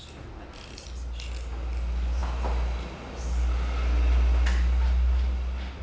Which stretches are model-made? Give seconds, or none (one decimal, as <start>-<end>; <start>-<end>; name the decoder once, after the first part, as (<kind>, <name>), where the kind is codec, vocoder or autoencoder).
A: none

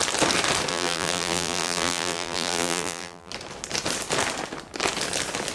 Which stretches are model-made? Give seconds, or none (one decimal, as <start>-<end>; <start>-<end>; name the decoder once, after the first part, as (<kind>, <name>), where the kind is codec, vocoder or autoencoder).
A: 0.7-3.3 (vocoder, BigVGAN v2)

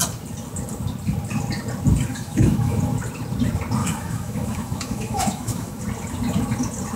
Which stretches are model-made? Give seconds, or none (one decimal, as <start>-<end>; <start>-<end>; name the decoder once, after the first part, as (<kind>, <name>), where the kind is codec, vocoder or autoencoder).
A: 2.1-2.8 (autoencoder, DAC-VAE); 3.8-5.8

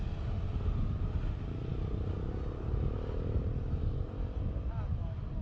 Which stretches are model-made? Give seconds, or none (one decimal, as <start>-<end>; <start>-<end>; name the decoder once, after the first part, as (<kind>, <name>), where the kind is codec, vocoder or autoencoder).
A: none

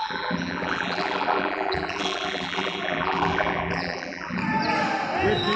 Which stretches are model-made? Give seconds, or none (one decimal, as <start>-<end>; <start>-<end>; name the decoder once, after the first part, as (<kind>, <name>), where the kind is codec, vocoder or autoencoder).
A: 0.0-4.4 (vocoder, BigVGAN v2)

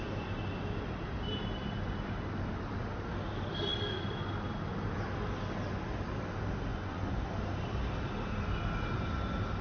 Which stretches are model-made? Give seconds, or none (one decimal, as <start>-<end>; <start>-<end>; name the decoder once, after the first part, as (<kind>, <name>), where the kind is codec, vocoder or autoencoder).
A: 6.7-7.3 (vocoder, Vocos)